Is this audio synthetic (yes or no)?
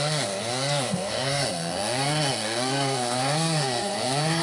yes